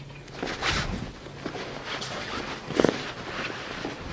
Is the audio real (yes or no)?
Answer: yes